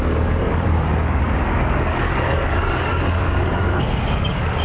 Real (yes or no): no